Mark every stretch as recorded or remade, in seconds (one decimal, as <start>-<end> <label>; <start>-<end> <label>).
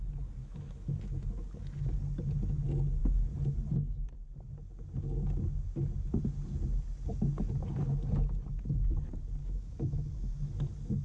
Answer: 0.0-0.4 recorded; 0.4-1.0 remade; 1.0-9.4 recorded; 9.4-10.1 remade; 10.1-11.0 recorded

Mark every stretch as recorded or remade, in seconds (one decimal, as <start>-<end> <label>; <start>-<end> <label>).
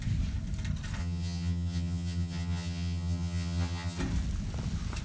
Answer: 0.0-1.0 recorded; 1.0-4.0 remade; 4.0-5.0 recorded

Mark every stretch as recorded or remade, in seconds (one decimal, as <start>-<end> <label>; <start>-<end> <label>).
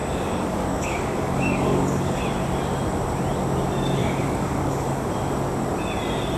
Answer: 0.0-2.2 remade; 2.2-4.0 recorded; 4.0-5.1 remade; 5.1-6.4 recorded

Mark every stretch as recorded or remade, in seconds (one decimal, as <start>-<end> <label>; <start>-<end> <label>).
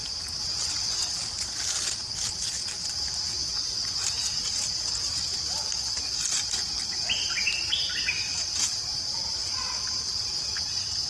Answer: 0.0-11.1 recorded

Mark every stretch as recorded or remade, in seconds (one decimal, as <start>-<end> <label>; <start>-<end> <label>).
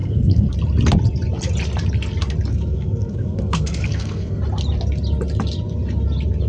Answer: 0.0-0.5 remade; 0.5-2.5 recorded; 2.5-4.4 remade; 4.4-6.5 recorded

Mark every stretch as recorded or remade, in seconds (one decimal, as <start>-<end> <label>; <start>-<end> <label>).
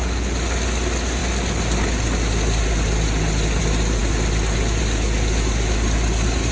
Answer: 0.0-6.5 recorded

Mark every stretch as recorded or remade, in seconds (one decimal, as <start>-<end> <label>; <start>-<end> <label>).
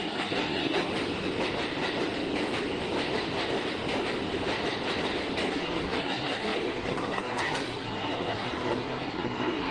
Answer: 0.0-0.9 remade; 0.9-5.5 recorded; 5.5-9.7 remade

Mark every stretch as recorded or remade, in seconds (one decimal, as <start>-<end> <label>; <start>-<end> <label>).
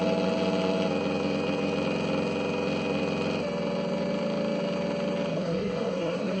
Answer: 0.0-5.3 recorded; 5.3-6.4 remade